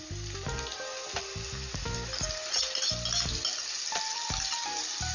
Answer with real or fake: real